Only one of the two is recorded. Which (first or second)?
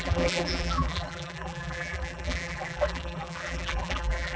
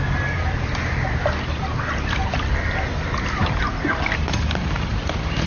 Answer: second